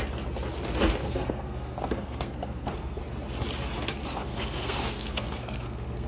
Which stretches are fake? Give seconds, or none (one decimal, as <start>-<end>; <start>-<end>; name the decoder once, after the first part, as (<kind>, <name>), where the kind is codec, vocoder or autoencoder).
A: 1.0-3.0 (codec, SNAC); 4.0-6.1